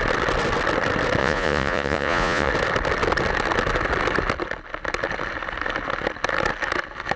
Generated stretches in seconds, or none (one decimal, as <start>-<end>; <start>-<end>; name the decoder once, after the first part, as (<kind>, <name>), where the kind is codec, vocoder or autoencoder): 1.2-2.5 (vocoder, Vocos)